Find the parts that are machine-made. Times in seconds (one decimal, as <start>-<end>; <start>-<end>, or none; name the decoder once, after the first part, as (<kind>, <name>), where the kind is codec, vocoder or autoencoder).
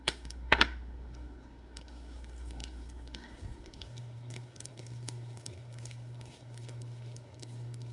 0.0-7.9 (codec, SNAC)